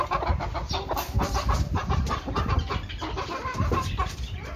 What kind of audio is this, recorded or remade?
recorded